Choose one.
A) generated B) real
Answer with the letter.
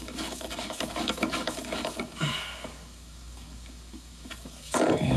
A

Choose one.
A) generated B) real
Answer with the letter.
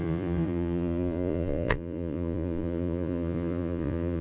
A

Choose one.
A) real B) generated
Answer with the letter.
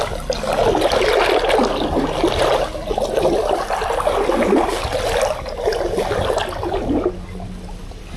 A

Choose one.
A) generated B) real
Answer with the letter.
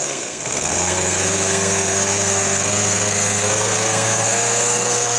A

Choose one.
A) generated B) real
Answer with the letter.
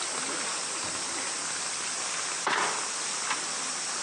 B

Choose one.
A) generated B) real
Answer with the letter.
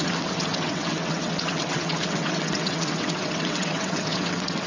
A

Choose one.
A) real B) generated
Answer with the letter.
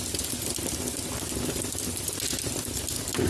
A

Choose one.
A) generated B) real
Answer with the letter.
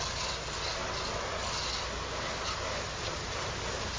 B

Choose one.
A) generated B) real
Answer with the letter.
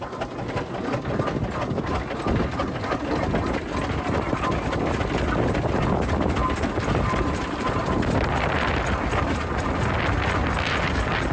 B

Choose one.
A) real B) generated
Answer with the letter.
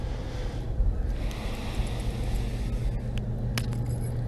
A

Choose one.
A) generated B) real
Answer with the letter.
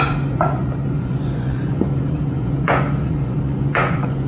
A